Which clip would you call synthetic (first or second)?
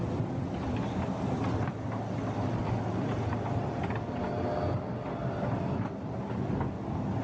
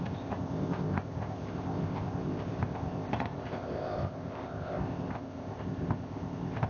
second